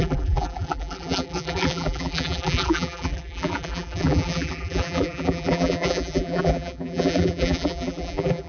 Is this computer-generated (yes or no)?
yes